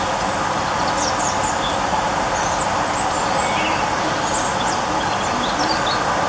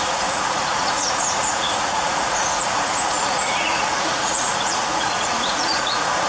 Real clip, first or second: first